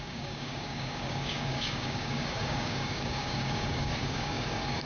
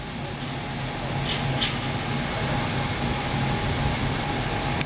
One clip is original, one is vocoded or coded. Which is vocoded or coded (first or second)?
first